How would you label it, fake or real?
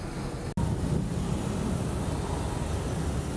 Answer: real